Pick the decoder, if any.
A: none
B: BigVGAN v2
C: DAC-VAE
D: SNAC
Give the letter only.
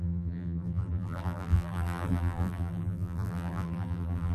B